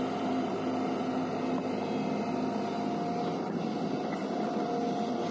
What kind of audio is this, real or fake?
real